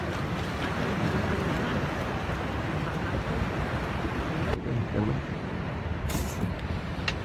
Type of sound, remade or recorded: recorded